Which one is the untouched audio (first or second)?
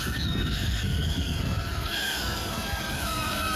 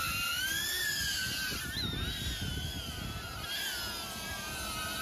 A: second